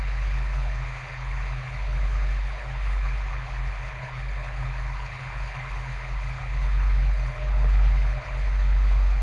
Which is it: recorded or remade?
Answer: remade